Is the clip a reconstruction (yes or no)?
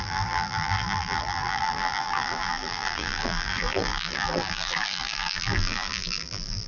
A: yes